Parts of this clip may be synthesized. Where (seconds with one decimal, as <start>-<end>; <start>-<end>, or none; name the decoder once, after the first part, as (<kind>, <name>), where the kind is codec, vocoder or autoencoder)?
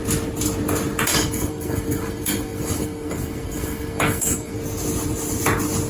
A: 1.1-4.6 (codec, SNAC)